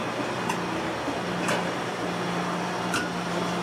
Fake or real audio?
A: fake